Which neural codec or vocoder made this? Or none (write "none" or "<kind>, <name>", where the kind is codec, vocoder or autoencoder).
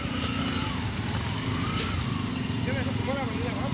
none